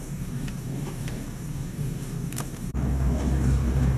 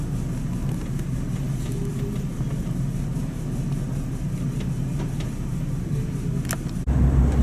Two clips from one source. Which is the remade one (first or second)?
first